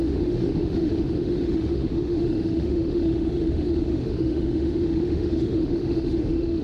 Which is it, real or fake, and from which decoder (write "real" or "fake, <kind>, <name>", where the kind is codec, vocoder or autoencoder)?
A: fake, autoencoder, DAC-VAE